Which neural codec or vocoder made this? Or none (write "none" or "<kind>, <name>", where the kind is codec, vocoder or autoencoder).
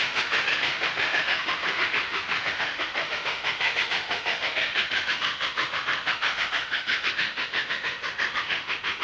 autoencoder, DAC-VAE